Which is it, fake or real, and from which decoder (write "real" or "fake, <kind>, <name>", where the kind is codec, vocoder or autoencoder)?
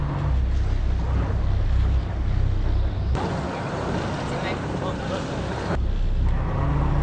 real